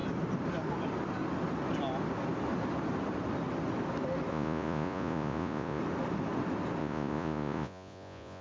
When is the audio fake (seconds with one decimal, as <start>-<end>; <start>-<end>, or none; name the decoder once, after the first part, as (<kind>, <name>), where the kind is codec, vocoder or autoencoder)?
4.3-5.8 (vocoder, Vocos); 6.8-8.4